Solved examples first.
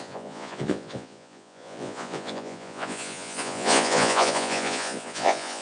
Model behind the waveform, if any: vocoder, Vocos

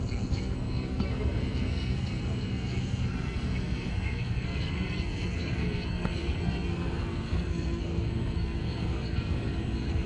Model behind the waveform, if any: codec, SNAC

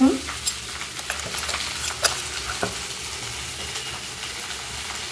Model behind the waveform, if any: none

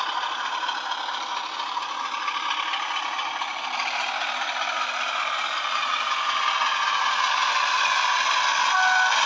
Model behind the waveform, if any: none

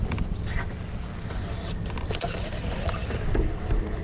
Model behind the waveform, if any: none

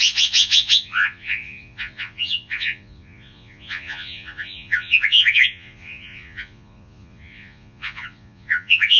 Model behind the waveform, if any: vocoder, Vocos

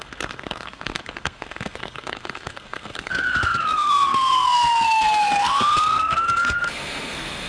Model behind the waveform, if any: codec, SNAC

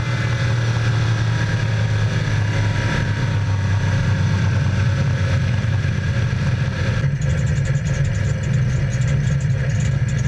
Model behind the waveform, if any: none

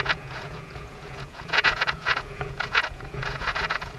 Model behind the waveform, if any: vocoder, Vocos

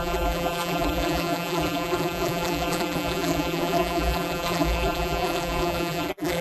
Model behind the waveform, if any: vocoder, BigVGAN v2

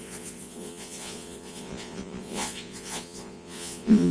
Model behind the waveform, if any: vocoder, Vocos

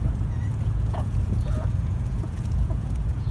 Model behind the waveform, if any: vocoder, Vocos